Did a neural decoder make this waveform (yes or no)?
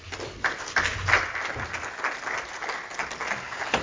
no